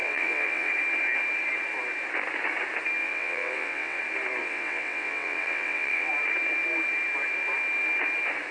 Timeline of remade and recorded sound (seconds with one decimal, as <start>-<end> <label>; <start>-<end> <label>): 0.0-0.7 remade; 0.7-3.0 recorded; 3.0-4.0 remade; 4.0-4.4 recorded; 4.4-6.1 remade; 6.1-8.5 recorded